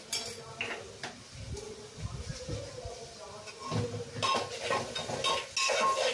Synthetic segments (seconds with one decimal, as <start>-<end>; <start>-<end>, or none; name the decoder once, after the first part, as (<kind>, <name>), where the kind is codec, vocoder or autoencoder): none